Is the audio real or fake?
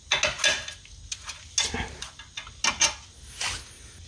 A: real